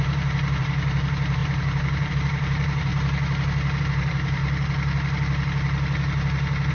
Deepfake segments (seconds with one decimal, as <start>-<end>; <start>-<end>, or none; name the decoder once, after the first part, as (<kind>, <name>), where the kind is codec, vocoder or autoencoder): 0.0-2.9 (vocoder, BigVGAN v2); 3.8-4.4